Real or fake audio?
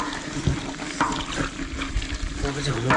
real